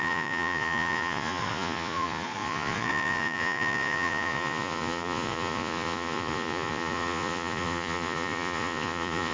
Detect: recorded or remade remade